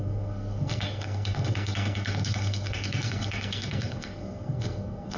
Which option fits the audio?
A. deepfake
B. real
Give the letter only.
A